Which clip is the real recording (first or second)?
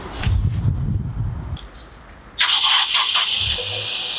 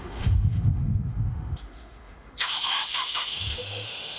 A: first